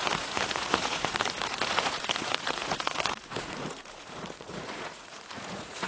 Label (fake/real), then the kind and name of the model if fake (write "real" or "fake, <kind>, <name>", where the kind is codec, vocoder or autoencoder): fake, vocoder, Vocos